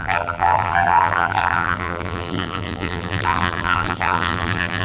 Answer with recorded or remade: remade